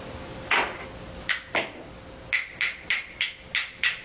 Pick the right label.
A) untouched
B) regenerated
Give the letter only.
A